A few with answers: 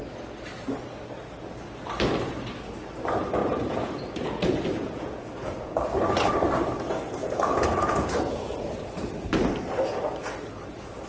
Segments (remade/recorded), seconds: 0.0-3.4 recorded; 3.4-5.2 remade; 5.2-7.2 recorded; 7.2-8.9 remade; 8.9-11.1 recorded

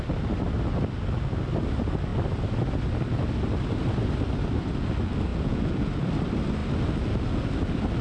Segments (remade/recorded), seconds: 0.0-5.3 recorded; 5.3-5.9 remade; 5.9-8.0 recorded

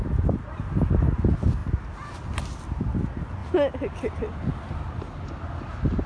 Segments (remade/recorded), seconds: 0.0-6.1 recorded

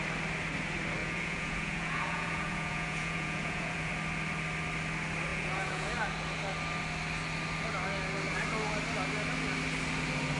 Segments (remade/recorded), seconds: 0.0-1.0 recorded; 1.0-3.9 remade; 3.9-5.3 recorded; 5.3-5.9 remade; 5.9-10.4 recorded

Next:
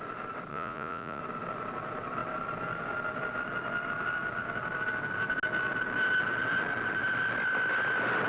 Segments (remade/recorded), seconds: 0.0-0.5 recorded; 0.5-1.2 remade; 1.2-8.3 recorded

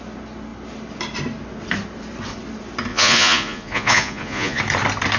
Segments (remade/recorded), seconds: 0.0-2.9 recorded; 2.9-4.6 remade; 4.6-5.2 recorded

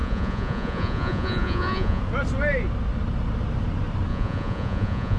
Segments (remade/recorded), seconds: 0.0-2.0 remade; 2.0-4.1 recorded; 4.1-5.2 remade